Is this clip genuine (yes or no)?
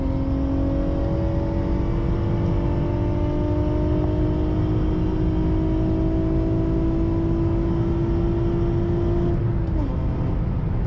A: yes